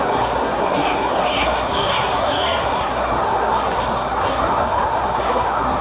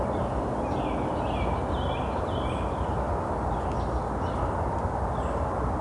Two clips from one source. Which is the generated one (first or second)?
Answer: first